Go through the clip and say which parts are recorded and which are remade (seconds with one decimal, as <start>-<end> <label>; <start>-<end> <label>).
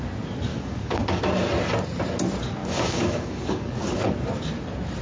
0.0-0.5 recorded; 0.5-1.2 remade; 1.2-2.6 recorded; 2.6-4.1 remade; 4.1-5.0 recorded